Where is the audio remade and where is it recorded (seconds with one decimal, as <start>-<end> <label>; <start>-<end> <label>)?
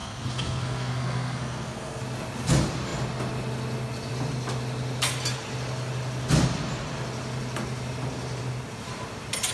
0.0-2.0 remade; 2.0-9.5 recorded